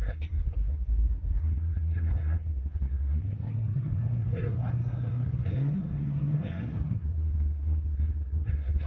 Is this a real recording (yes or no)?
no